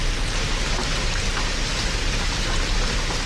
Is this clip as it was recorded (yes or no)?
yes